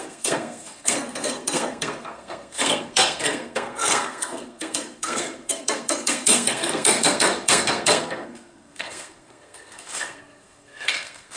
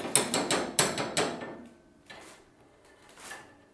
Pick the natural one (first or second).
second